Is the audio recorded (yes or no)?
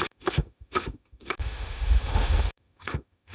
no